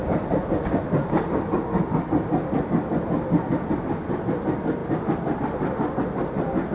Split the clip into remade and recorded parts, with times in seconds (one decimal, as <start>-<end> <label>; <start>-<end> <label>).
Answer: 0.0-0.8 remade; 0.8-6.7 recorded